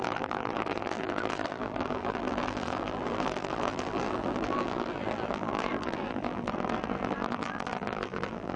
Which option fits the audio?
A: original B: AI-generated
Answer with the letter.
B